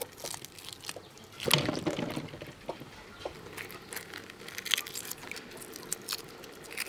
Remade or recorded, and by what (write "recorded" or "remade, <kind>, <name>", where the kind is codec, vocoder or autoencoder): recorded